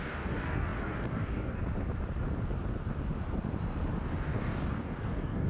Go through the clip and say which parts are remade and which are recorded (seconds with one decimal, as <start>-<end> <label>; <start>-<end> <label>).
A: 0.0-1.6 remade; 1.6-4.1 recorded; 4.1-5.5 remade